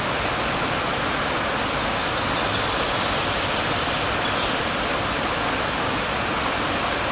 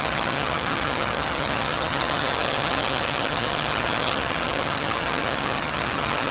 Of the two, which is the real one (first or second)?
first